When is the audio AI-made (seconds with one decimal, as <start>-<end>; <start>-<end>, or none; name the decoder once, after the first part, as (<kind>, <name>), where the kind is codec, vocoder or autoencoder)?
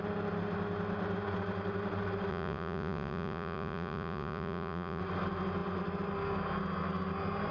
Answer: 2.3-5.0 (vocoder, Vocos)